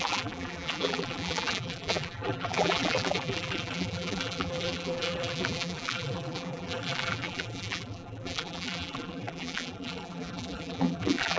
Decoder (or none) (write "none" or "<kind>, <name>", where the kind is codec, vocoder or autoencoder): vocoder, BigVGAN v2